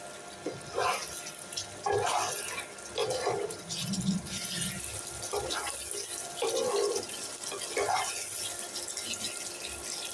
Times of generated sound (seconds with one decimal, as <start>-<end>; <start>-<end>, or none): none

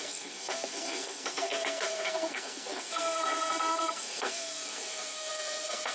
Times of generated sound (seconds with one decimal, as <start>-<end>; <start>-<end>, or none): 0.0-5.9

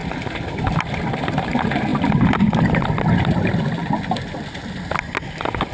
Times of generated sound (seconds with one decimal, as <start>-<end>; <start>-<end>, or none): 0.0-1.5; 3.8-4.6